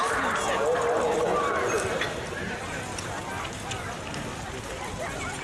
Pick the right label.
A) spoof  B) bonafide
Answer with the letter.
B